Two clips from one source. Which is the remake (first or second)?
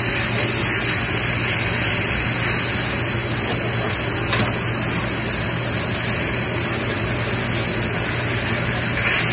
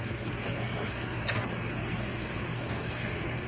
second